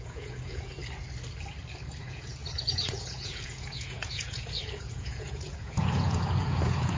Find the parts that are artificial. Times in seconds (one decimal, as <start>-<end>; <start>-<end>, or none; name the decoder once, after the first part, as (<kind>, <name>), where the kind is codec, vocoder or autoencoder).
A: 0.0-0.8 (vocoder, Vocos); 2.0-7.0